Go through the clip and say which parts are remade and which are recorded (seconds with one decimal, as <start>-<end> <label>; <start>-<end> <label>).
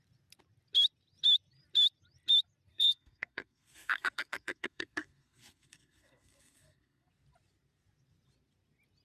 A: 0.0-2.7 recorded; 2.7-7.1 remade; 7.1-9.0 recorded